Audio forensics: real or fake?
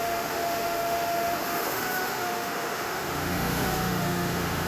fake